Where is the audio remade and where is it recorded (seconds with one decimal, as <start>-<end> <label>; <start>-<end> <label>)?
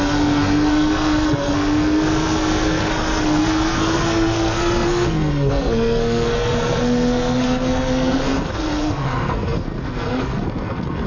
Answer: 0.0-11.1 remade